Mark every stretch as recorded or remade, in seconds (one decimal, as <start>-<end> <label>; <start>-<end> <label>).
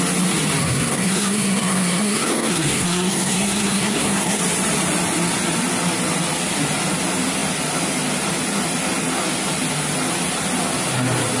0.0-0.6 recorded; 0.6-4.4 remade; 4.4-11.4 recorded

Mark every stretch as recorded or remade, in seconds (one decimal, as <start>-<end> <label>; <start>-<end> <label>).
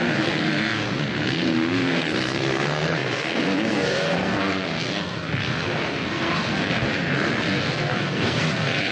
0.0-8.9 remade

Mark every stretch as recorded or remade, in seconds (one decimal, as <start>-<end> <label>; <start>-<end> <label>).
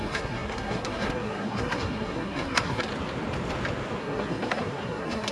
0.0-2.9 remade; 2.9-4.0 recorded; 4.0-5.3 remade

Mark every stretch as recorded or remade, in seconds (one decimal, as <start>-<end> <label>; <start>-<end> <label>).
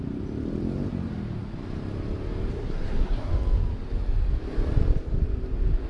0.0-2.5 recorded; 2.5-3.3 remade; 3.3-5.9 recorded